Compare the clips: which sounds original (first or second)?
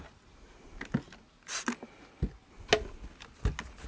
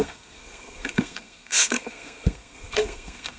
first